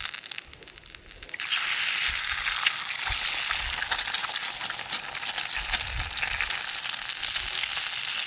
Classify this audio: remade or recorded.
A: recorded